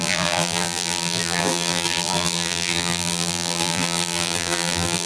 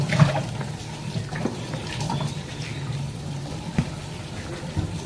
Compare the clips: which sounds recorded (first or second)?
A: second